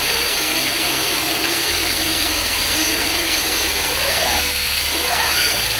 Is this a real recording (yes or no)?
no